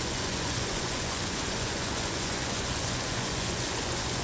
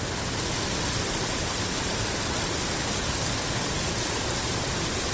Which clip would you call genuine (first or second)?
second